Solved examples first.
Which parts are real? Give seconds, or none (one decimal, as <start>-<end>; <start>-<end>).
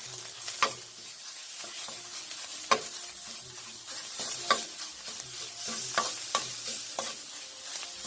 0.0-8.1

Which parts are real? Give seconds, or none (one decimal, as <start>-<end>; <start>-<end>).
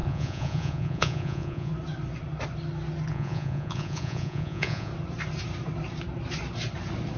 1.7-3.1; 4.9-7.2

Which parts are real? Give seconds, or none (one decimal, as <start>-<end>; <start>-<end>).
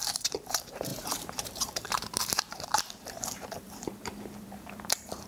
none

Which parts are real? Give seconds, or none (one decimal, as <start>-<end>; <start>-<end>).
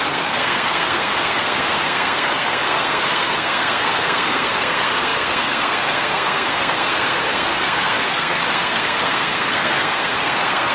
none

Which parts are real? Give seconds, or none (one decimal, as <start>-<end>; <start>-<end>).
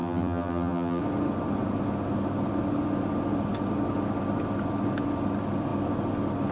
1.0-6.5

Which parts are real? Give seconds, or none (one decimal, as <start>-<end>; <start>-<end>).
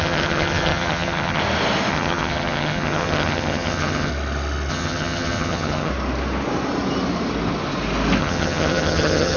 1.4-1.9; 4.1-4.7; 5.9-8.2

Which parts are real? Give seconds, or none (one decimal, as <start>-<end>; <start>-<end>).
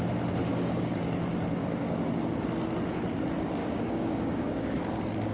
0.0-0.5; 1.1-1.6; 2.1-3.6; 4.8-5.3